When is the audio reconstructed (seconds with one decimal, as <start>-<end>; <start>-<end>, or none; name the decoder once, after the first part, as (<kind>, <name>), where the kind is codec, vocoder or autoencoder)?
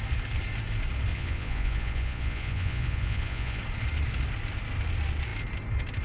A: 1.1-3.6 (vocoder, Vocos)